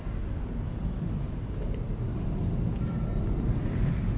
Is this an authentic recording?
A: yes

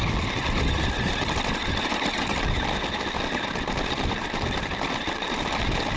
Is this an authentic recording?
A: yes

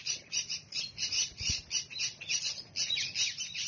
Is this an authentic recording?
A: yes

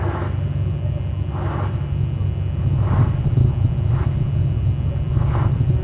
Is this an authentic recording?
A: yes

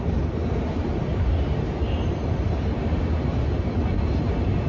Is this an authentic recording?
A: yes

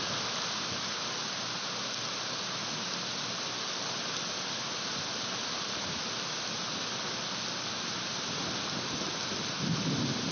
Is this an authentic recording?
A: yes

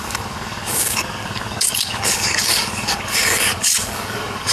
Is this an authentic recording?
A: no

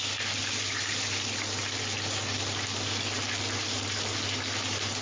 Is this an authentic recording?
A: yes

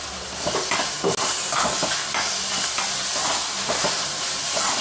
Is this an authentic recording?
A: yes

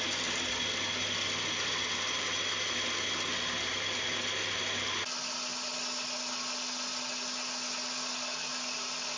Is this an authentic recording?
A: yes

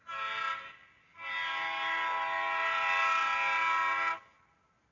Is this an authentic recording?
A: yes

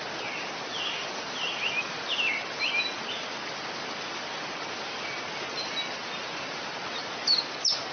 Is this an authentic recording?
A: yes